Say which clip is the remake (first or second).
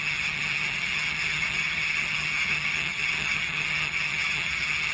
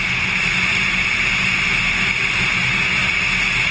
first